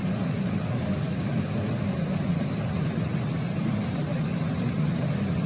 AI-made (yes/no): no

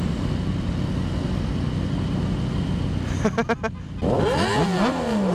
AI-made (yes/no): no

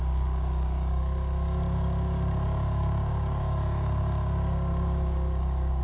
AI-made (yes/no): yes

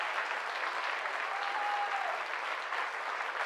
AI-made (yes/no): no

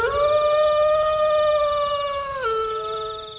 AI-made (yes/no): no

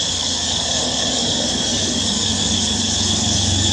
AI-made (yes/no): yes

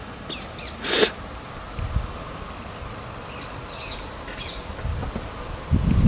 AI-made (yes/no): no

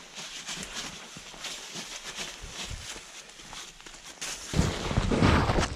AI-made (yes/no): no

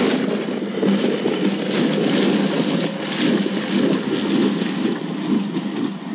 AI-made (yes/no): no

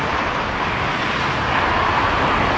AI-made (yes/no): no